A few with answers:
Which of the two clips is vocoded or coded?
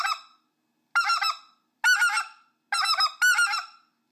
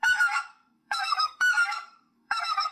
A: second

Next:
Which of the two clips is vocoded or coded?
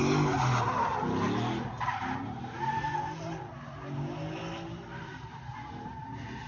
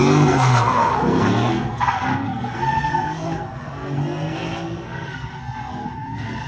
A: second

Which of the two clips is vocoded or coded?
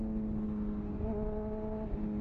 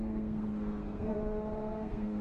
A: second